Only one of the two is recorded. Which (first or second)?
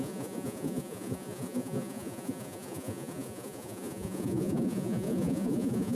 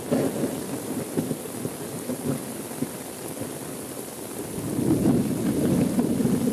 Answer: second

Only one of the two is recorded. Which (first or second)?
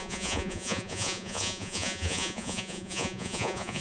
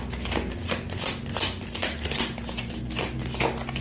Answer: second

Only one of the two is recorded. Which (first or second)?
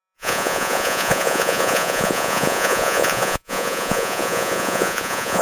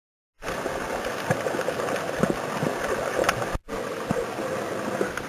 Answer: second